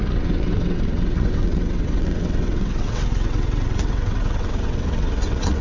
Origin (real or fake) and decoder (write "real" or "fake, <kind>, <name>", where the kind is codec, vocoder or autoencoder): fake, vocoder, WaveNeXt